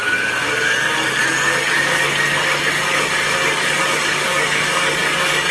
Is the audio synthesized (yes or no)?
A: yes